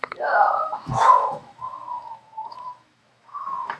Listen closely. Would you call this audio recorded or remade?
remade